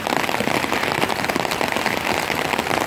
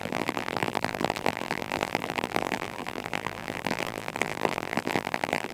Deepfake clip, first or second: second